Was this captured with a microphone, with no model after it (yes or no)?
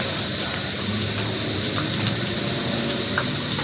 yes